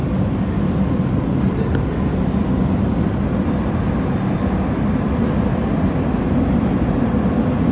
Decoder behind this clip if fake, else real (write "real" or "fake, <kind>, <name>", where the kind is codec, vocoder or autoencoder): real